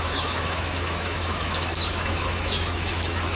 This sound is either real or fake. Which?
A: fake